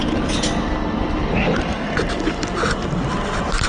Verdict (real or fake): real